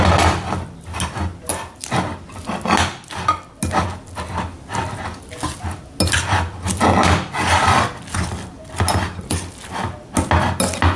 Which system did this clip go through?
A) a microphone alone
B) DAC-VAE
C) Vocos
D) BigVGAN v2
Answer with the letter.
A